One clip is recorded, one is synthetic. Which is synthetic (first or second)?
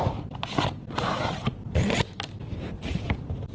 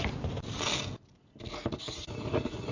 first